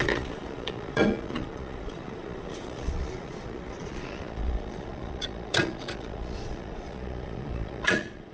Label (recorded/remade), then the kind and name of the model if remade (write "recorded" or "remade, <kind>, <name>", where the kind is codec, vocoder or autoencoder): remade, vocoder, Vocos